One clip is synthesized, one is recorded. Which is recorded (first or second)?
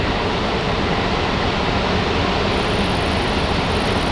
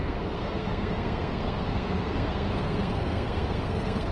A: first